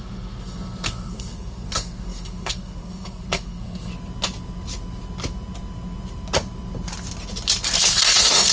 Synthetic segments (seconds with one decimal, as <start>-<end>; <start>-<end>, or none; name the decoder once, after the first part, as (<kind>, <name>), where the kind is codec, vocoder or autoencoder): 0.0-3.9 (codec, SNAC); 7.9-8.5